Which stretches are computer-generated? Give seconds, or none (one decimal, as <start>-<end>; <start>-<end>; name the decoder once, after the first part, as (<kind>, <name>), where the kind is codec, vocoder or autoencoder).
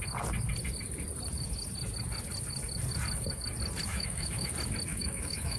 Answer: 3.9-4.5 (autoencoder, DAC-VAE); 4.9-5.6